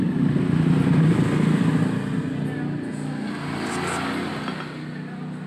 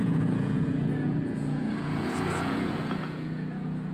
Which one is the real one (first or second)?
first